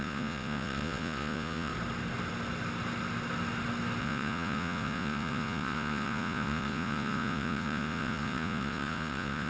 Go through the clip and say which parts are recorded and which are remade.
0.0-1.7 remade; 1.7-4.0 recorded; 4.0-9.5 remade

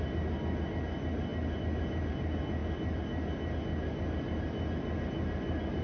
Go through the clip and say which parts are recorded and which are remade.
0.0-5.8 recorded

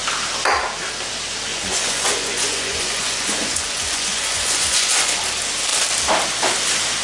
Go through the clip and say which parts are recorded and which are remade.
0.0-1.5 recorded; 1.5-5.2 remade; 5.2-7.0 recorded

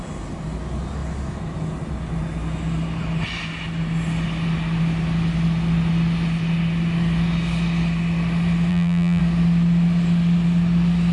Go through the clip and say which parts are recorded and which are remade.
0.0-8.7 recorded; 8.7-9.2 remade; 9.2-11.1 recorded

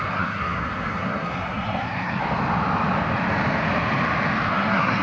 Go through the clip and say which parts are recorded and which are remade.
0.0-2.2 remade; 2.2-4.5 recorded; 4.5-5.0 remade

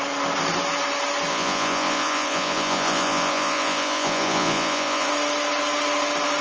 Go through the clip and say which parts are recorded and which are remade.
0.0-1.3 recorded; 1.3-5.1 remade; 5.1-6.4 recorded

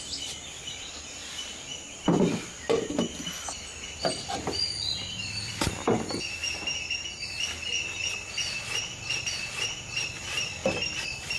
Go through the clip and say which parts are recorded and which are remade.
0.0-1.2 remade; 1.2-2.0 recorded; 2.0-5.9 remade; 5.9-7.8 recorded; 7.8-11.4 remade